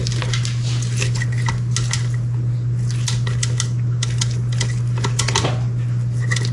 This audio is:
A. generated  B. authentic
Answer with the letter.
B